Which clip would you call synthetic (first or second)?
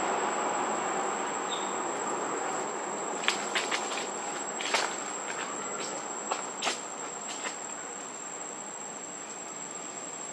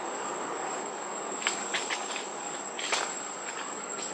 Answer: second